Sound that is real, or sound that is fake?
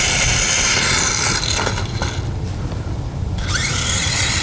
real